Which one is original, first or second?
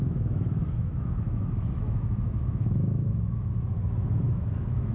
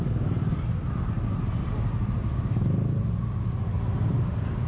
second